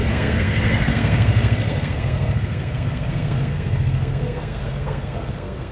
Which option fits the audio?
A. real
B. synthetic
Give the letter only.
B